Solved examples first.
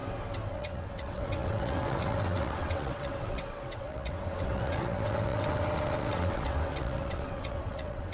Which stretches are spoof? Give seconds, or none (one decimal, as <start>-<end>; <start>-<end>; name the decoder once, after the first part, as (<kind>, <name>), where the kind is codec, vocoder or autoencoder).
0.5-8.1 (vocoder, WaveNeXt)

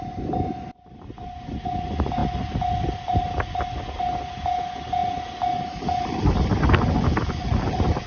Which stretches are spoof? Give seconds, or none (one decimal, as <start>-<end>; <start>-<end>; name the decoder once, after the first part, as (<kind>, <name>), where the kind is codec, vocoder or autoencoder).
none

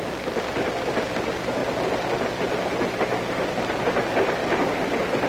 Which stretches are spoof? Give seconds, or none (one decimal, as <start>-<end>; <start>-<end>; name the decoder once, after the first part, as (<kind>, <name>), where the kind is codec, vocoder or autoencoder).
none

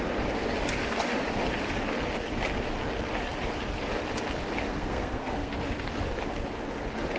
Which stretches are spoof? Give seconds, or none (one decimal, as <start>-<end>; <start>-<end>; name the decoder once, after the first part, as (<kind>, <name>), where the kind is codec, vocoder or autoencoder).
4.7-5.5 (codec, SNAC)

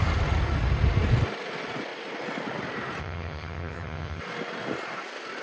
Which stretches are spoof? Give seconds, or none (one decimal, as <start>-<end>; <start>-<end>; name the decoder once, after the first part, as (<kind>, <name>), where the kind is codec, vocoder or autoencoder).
3.0-4.2 (vocoder, HiFi-GAN)

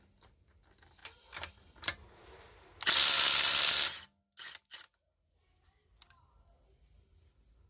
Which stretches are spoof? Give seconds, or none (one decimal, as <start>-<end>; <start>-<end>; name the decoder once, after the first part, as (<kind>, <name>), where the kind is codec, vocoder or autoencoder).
none

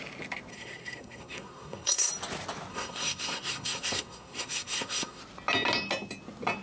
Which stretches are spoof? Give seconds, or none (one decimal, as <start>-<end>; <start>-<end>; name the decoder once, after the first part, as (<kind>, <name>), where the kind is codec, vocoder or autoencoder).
0.5-2.1 (codec, SNAC); 2.7-5.2

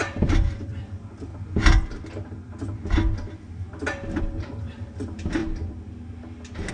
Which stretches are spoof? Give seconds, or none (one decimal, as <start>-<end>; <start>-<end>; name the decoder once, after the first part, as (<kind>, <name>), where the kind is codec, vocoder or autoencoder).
0.0-1.3 (vocoder, BigVGAN v2); 4.2-5.4